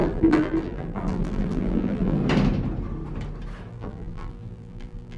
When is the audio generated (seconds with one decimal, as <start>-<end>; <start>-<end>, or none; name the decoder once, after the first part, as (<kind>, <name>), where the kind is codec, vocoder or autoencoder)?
0.0-2.2 (vocoder, BigVGAN v2); 3.7-5.2